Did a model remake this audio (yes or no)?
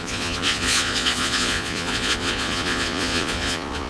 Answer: yes